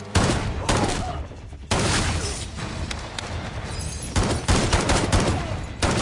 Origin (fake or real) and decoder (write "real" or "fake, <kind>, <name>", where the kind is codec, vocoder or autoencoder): fake, vocoder, BigVGAN v2